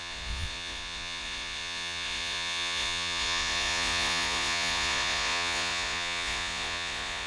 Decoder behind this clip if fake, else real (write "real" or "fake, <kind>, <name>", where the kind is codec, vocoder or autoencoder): fake, vocoder, Vocos